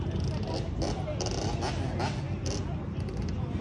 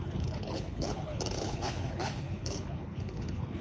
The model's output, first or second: second